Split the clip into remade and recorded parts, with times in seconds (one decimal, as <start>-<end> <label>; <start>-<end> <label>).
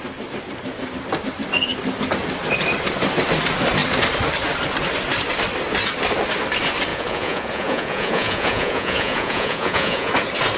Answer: 0.0-6.9 recorded; 6.9-10.1 remade; 10.1-10.6 recorded